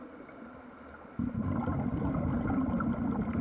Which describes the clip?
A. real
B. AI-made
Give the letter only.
A